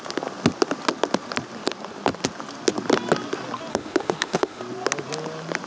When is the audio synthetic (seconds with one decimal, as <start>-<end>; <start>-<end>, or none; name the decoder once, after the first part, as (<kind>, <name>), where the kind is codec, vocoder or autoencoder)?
3.7-4.6 (autoencoder, DAC-VAE)